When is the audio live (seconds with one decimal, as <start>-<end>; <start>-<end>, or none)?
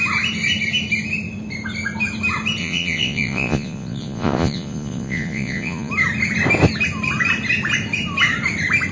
0.0-2.6; 5.9-8.9